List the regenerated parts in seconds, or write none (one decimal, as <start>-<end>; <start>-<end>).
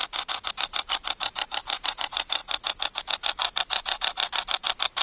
0.5-2.4; 3.0-5.0